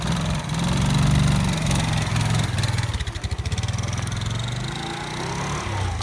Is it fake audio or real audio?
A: real